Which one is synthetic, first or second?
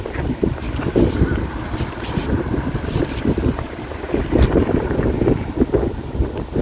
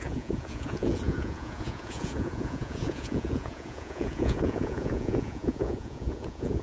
second